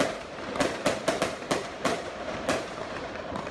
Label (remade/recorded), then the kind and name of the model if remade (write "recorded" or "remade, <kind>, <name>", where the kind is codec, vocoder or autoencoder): remade, vocoder, BigVGAN v2